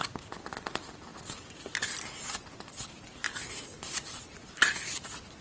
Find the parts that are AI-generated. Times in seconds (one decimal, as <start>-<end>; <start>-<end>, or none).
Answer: none